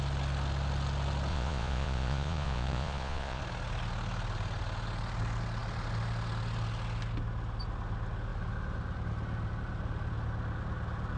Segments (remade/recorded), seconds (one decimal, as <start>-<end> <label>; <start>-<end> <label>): 0.0-1.3 recorded; 1.3-3.4 remade; 3.4-11.2 recorded